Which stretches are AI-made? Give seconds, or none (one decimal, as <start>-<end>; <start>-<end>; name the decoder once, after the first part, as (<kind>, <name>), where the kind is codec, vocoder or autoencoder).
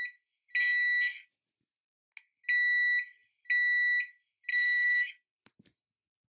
4.5-5.1 (codec, SNAC)